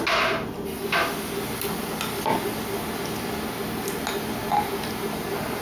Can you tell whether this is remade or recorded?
recorded